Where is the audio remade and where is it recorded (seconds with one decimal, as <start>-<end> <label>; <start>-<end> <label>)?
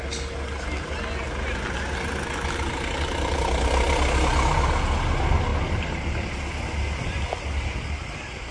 0.0-8.5 recorded